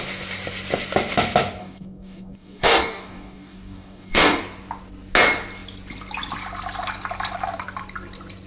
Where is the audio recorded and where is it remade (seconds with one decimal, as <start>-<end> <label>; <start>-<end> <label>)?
0.0-1.6 recorded; 1.6-4.4 remade; 4.4-8.5 recorded